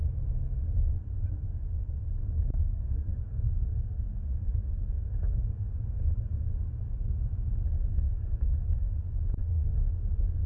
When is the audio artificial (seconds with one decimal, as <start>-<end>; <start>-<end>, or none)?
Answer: 2.2-6.5; 7.9-8.9; 9.4-9.9